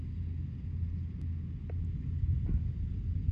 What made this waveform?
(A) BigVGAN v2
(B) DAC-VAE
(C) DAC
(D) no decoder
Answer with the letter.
D